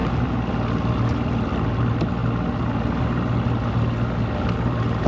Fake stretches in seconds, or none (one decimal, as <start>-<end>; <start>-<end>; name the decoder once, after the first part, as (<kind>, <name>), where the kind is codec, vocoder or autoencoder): none